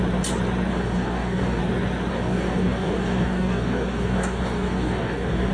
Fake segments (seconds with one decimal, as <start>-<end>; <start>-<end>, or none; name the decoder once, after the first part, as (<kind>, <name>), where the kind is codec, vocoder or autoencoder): 0.7-1.6 (codec, DAC); 2.1-5.5